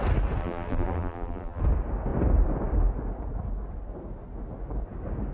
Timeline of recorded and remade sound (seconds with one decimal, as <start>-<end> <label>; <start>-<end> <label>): 0.0-0.4 recorded; 0.4-1.6 remade; 1.6-5.3 recorded